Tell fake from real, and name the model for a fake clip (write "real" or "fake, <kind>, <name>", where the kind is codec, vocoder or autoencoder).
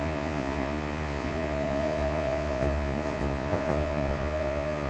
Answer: fake, vocoder, Vocos